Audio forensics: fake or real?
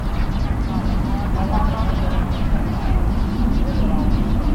real